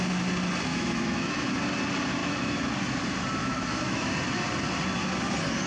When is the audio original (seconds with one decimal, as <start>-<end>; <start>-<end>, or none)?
0.0-0.7; 1.5-2.2; 2.7-3.4; 4.1-5.7